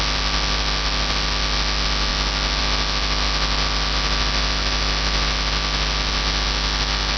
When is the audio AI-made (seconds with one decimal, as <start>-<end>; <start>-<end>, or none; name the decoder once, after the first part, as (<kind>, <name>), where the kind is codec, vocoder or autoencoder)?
none